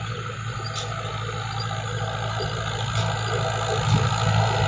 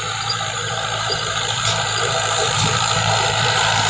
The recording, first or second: first